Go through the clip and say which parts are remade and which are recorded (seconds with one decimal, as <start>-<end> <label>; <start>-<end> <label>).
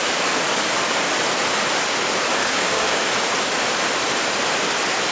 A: 0.0-2.4 recorded; 2.4-3.0 remade; 3.0-5.1 recorded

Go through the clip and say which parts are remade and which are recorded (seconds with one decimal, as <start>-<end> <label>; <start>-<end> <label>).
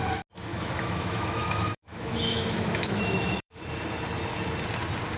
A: 0.0-0.5 recorded; 0.5-3.6 remade; 3.6-5.2 recorded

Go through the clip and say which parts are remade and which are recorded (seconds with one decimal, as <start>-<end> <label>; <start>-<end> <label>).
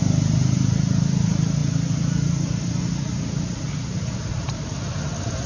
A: 0.0-5.5 recorded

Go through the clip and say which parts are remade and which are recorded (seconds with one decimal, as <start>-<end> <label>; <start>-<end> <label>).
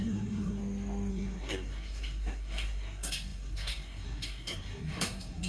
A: 0.0-0.6 remade; 0.6-1.1 recorded; 1.1-5.5 remade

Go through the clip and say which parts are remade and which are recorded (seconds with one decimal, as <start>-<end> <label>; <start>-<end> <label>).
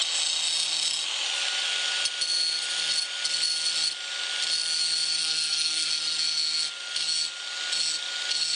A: 0.0-5.2 recorded; 5.2-5.9 remade; 5.9-8.6 recorded